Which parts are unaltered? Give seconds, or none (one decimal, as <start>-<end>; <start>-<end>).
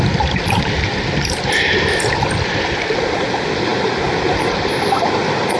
0.0-5.6